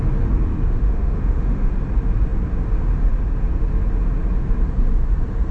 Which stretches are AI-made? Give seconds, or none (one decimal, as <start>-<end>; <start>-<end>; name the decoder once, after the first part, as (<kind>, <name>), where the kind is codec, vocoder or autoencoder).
0.5-1.7 (autoencoder, DAC-VAE)